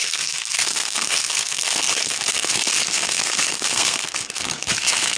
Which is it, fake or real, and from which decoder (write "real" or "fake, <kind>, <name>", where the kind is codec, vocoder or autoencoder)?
fake, codec, SNAC